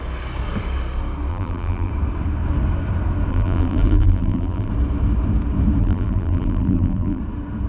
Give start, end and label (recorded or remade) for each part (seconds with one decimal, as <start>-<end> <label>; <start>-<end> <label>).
0.0-1.3 recorded; 1.3-1.9 remade; 1.9-3.3 recorded; 3.3-4.7 remade; 4.7-5.8 recorded; 5.8-7.2 remade; 7.2-7.7 recorded